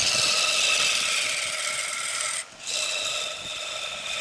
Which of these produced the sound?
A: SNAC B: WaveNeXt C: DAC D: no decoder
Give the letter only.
D